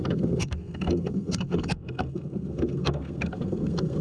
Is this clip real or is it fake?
fake